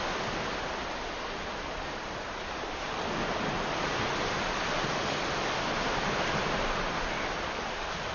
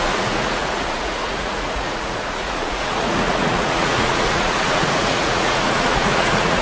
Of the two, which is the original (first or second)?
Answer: first